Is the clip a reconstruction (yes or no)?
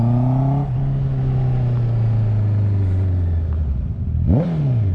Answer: no